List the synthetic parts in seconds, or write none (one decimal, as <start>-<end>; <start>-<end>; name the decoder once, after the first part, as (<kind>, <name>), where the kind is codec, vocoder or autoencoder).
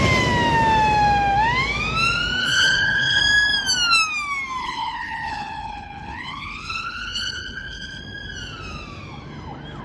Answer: 2.4-3.2 (codec, HILCodec); 4.6-8.0